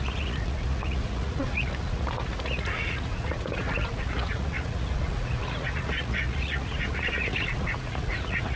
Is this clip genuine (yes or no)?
no